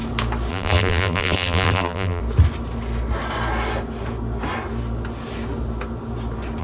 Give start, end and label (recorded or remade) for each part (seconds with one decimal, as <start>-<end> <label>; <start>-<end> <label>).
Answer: 0.0-0.5 recorded; 0.5-2.2 remade; 2.2-6.6 recorded